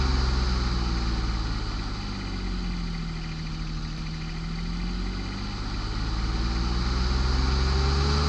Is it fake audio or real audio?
real